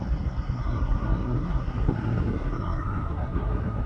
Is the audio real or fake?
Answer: fake